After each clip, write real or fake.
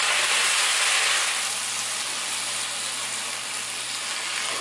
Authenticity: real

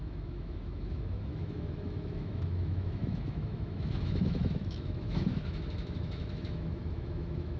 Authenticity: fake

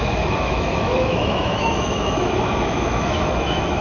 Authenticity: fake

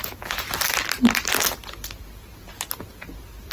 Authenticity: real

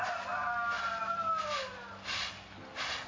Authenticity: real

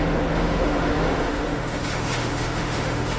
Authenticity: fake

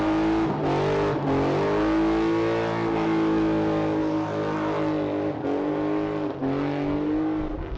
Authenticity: real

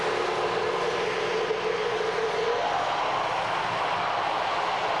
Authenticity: real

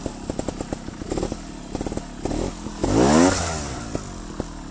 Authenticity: real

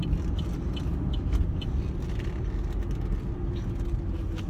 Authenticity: real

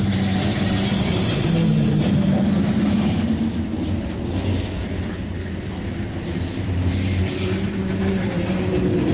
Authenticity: real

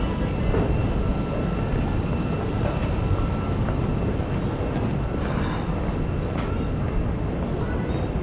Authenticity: real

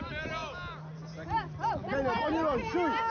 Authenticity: real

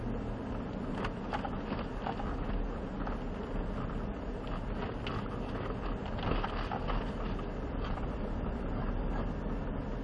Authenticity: real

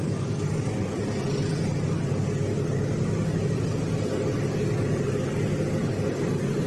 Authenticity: real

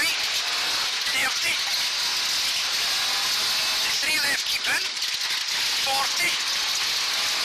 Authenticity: real